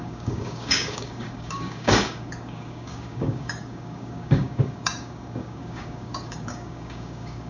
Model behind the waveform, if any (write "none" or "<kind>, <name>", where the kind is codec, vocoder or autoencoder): codec, DAC